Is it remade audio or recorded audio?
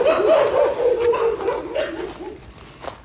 recorded